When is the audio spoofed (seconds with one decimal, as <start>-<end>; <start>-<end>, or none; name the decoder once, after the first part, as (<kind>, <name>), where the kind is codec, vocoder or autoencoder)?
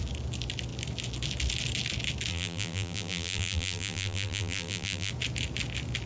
2.3-5.1 (vocoder, BigVGAN v2)